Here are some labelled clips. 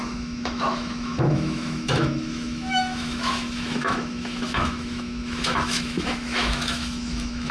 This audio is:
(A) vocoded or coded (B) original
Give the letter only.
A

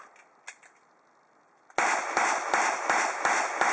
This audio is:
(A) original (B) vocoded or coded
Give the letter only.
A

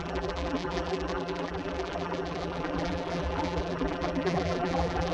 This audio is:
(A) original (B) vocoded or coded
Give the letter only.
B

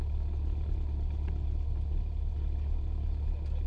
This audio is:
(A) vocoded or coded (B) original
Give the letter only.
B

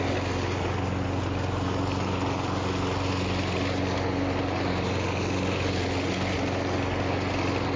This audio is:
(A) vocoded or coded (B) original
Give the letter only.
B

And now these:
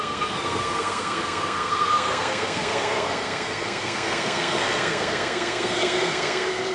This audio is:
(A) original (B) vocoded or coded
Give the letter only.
B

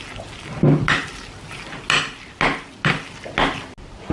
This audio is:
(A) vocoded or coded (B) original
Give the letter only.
B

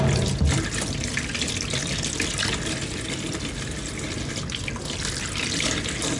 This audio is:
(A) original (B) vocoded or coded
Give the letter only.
A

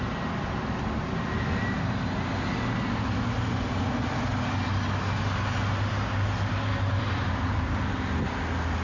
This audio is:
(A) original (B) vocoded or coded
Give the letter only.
A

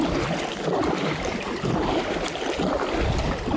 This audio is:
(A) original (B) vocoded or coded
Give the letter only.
A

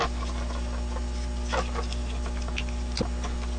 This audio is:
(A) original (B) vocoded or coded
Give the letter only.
A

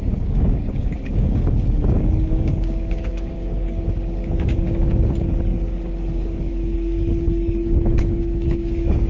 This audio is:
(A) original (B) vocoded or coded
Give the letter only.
B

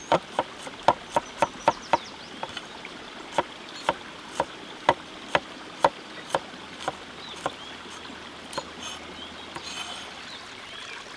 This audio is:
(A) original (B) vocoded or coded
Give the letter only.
A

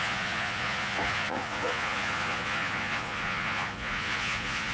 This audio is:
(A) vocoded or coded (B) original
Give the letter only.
A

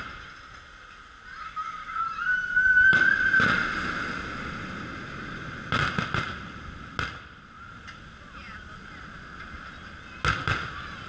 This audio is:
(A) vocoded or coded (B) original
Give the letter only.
B